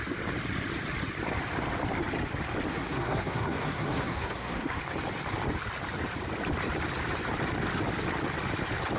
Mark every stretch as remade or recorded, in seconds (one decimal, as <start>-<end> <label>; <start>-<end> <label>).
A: 0.0-2.7 recorded; 2.7-4.8 remade; 4.8-9.0 recorded